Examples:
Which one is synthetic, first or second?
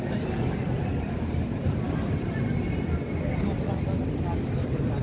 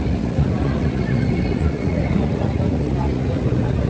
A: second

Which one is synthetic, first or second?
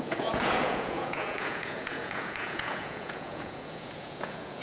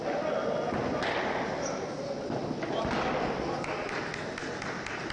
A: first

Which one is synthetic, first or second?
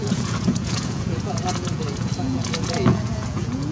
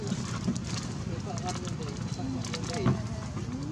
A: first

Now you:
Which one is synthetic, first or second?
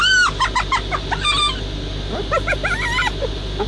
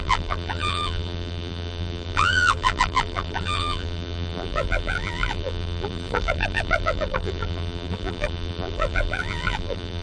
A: second